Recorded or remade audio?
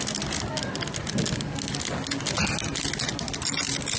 recorded